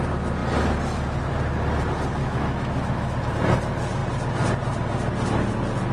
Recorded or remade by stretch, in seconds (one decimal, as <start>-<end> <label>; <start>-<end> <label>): 0.0-2.2 recorded; 2.2-3.2 remade; 3.2-5.9 recorded